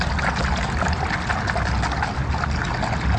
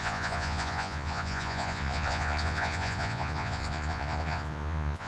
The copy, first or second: second